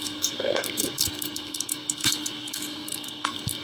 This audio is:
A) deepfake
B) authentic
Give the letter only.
A